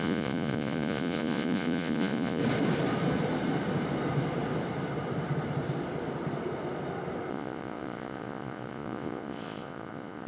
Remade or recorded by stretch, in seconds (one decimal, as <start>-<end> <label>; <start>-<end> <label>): 0.0-2.4 remade; 2.4-7.3 recorded; 7.3-10.3 remade